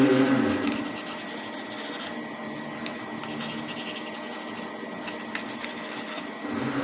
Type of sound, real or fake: real